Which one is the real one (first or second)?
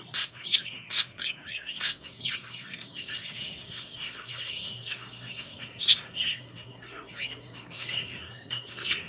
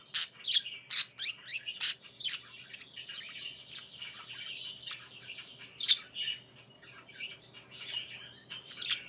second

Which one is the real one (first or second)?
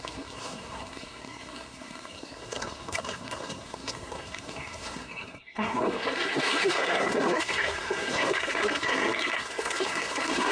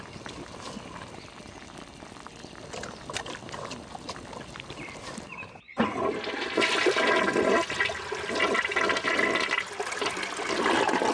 second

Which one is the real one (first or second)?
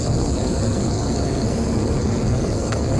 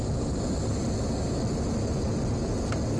second